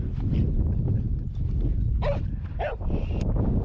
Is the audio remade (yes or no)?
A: no